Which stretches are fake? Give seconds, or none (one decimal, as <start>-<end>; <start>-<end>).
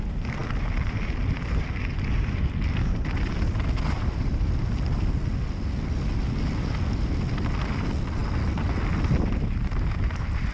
none